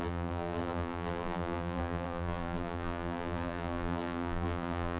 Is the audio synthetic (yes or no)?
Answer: yes